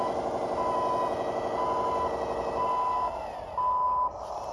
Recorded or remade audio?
recorded